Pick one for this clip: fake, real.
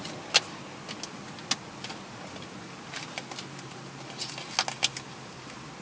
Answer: real